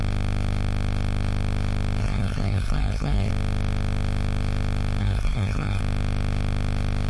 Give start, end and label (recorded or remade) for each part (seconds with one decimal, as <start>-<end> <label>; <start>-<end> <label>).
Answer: 0.0-2.0 recorded; 2.0-3.3 remade; 3.3-5.0 recorded; 5.0-5.8 remade; 5.8-7.1 recorded